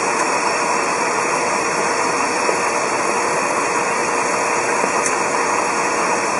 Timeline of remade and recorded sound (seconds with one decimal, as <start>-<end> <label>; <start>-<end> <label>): 0.0-4.0 remade; 4.0-6.0 recorded; 6.0-6.4 remade